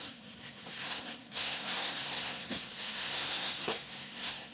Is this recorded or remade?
remade